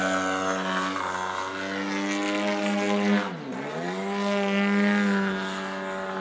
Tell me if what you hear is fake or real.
real